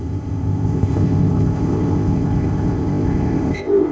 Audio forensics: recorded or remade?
remade